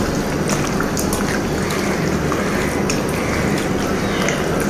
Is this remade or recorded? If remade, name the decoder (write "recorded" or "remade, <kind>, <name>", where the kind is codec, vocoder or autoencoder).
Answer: recorded